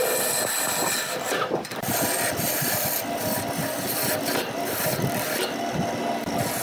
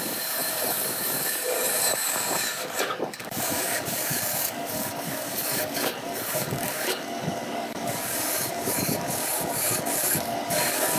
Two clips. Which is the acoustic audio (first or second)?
first